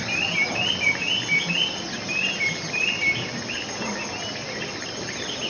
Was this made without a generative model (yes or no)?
yes